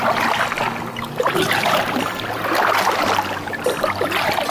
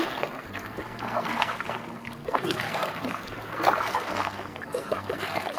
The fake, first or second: second